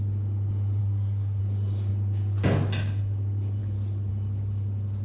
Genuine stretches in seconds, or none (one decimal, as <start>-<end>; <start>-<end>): 0.0-0.8; 1.4-5.0